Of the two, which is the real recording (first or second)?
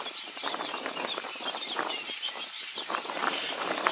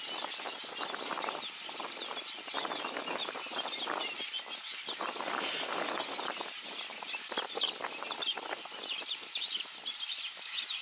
second